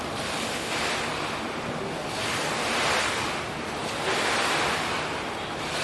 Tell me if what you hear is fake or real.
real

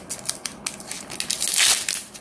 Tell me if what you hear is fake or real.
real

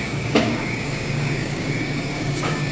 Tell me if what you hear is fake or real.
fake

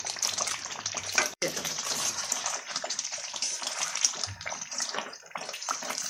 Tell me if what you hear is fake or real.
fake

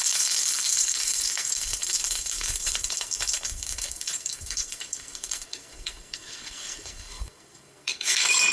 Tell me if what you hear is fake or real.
fake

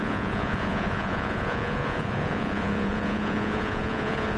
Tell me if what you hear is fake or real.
fake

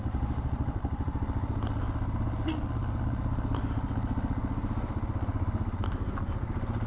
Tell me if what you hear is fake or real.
real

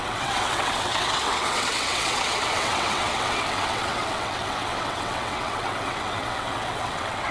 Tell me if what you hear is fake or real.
fake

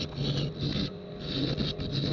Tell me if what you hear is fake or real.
real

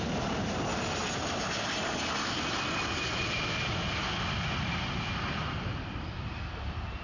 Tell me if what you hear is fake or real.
real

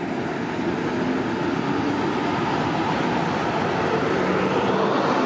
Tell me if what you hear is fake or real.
real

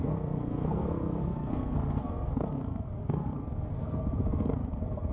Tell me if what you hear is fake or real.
fake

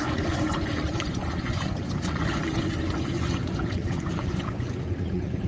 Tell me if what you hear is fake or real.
fake